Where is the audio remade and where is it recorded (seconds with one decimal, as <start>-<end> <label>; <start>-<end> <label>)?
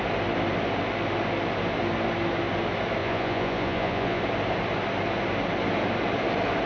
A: 0.0-3.0 recorded; 3.0-4.2 remade; 4.2-6.7 recorded